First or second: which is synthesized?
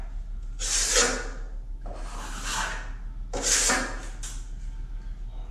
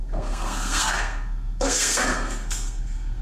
second